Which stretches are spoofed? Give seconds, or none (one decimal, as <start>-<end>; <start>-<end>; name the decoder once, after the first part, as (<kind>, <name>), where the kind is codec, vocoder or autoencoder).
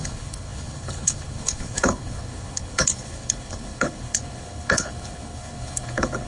0.0-6.3 (codec, HILCodec)